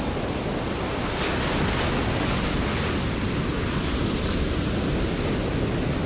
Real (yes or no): yes